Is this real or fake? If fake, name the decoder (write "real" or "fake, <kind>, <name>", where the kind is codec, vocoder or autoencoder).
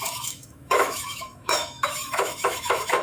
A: fake, autoencoder, DAC-VAE